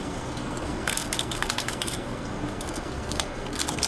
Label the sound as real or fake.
fake